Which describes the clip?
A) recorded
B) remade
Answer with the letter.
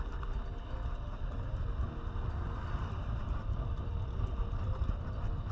A